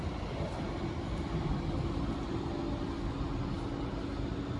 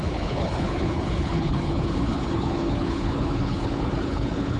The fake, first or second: second